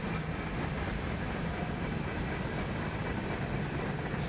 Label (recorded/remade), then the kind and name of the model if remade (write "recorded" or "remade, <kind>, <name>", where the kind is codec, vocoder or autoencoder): recorded